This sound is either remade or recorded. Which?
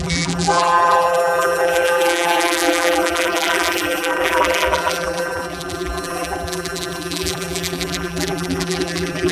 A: remade